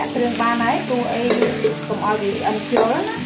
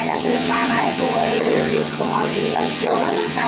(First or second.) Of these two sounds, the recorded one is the first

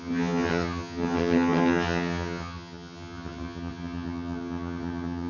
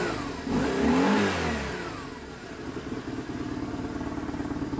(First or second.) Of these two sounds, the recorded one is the second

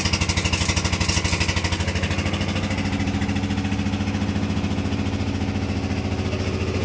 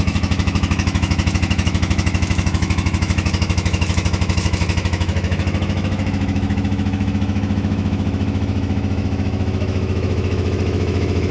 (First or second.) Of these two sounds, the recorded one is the first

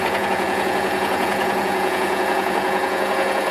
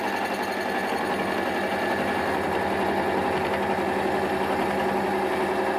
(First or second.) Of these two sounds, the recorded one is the second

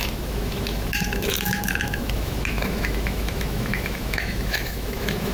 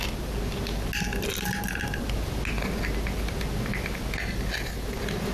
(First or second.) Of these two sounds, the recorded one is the second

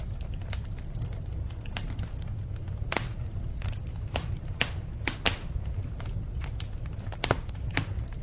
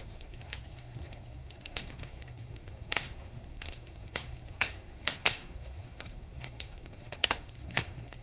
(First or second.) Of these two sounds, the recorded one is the first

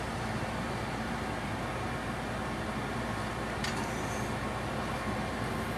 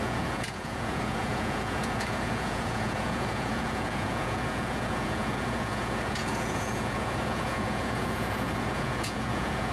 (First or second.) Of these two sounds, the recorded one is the first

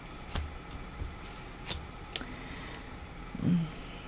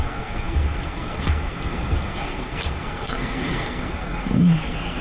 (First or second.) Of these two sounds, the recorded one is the first